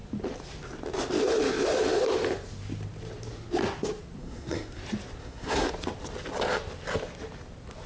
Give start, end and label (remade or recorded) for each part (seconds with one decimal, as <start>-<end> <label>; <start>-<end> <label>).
0.0-4.2 recorded; 4.2-4.8 remade; 4.8-5.2 recorded; 5.2-5.7 remade; 5.7-7.9 recorded